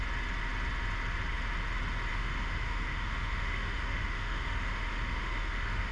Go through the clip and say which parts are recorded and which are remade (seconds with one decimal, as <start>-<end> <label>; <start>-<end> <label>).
0.0-2.1 recorded; 2.1-5.9 remade